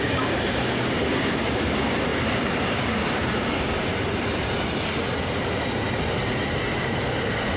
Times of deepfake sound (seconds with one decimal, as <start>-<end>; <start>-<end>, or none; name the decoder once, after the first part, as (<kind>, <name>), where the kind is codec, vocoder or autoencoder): 0.0-3.9 (codec, DAC)